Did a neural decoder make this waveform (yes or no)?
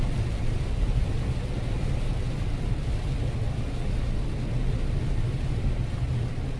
no